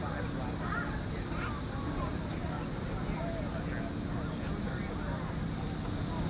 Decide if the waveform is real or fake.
real